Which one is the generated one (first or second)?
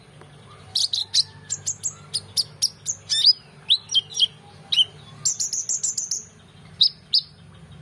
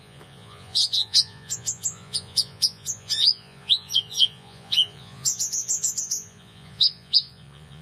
second